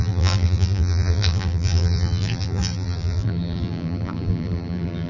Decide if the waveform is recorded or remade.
remade